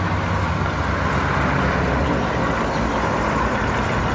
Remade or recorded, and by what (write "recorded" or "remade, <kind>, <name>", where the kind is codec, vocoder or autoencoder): recorded